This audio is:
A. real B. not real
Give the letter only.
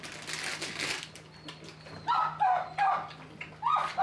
A